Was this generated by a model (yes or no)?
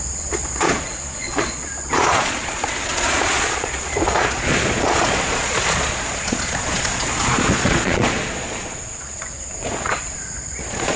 yes